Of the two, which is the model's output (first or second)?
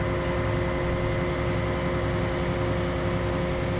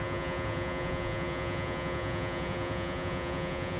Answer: second